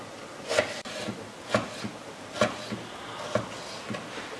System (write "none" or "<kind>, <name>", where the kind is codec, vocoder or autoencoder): none